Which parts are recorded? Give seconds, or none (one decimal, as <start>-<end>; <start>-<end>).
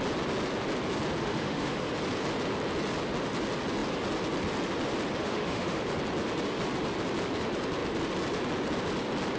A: 0.0-1.2; 1.9-5.2; 5.8-9.4